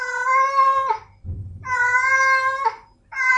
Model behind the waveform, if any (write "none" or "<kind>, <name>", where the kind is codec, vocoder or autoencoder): none